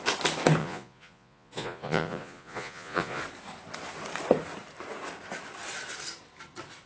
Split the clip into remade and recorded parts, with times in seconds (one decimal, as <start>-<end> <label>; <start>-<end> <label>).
0.0-0.6 recorded; 0.6-3.2 remade; 3.2-6.9 recorded